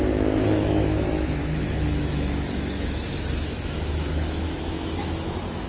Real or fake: fake